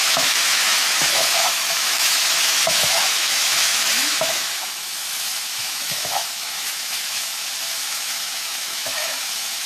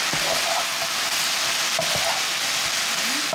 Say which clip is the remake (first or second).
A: first